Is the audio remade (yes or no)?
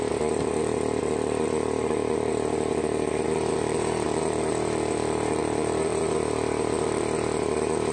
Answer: yes